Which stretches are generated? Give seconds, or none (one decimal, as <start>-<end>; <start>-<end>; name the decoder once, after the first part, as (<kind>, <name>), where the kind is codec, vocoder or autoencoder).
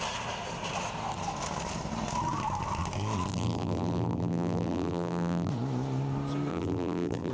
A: 3.3-5.5 (vocoder, BigVGAN v2); 6.5-7.3